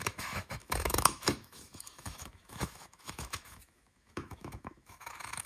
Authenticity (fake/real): fake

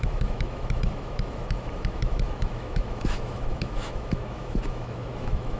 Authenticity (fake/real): fake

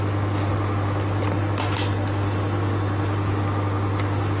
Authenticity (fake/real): real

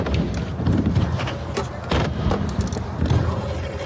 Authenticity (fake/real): real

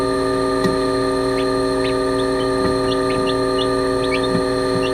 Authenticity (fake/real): real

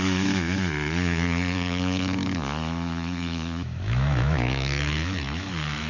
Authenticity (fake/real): fake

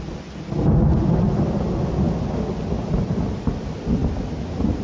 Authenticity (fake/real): real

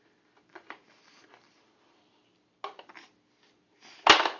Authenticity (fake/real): real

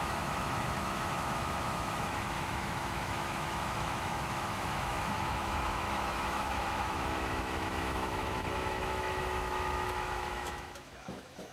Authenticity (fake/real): fake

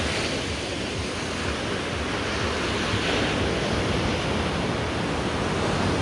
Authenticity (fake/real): real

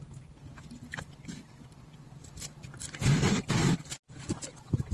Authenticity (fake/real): real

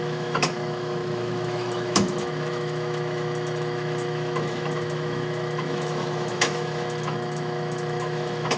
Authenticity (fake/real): fake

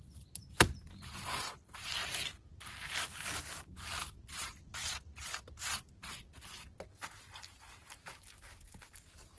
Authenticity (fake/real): real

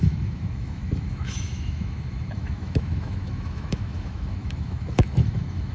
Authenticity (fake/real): fake